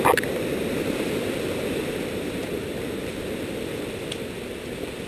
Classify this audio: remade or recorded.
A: recorded